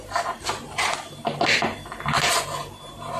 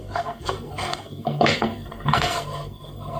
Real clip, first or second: first